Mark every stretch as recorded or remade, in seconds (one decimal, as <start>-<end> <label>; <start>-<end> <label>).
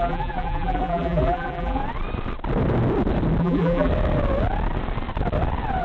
0.0-1.8 remade; 1.8-3.4 recorded; 3.4-3.9 remade; 3.9-5.8 recorded